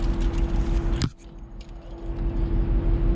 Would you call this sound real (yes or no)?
yes